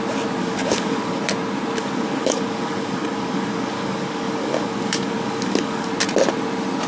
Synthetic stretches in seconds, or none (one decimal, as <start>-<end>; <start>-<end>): 0.4-1.2; 1.8-5.9

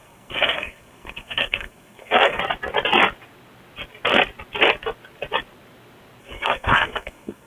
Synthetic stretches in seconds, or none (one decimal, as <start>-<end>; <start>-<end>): 0.0-2.4; 6.2-7.5

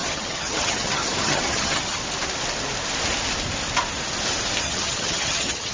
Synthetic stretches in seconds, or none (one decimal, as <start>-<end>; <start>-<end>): 0.0-2.0; 4.6-5.7